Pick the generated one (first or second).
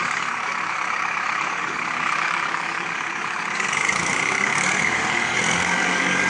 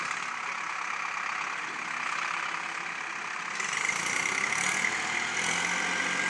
first